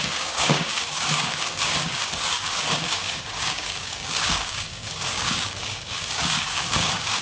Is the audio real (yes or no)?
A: no